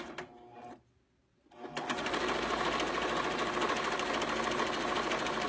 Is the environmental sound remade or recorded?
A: recorded